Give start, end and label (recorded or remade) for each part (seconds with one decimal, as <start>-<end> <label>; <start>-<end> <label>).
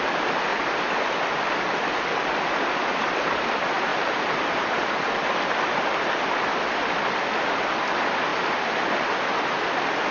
0.0-0.5 recorded; 0.5-1.1 remade; 1.1-3.9 recorded; 3.9-5.1 remade; 5.1-8.3 recorded; 8.3-8.8 remade; 8.8-10.1 recorded